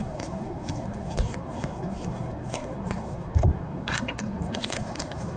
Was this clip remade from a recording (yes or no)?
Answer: yes